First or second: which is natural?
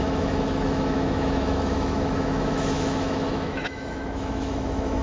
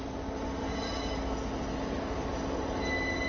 second